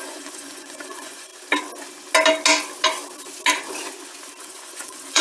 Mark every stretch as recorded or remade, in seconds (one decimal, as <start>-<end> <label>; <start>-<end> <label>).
0.0-1.3 remade; 1.3-4.4 recorded; 4.4-5.2 remade